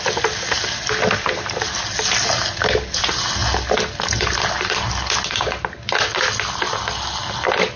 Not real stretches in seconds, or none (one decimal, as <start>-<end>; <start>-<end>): none